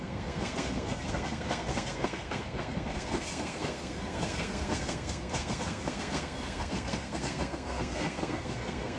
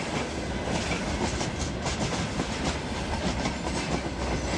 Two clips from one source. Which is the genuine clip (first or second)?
second